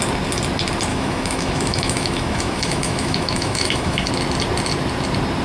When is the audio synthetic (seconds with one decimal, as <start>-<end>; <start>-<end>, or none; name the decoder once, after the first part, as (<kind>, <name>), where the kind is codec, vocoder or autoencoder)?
0.9-4.1 (autoencoder, DAC-VAE)